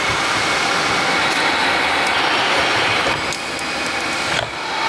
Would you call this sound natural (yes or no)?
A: yes